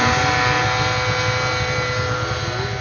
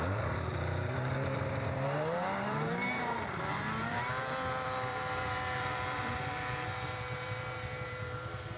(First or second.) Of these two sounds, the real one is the first